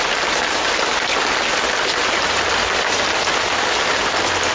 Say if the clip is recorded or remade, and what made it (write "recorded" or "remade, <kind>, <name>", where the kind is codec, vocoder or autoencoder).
recorded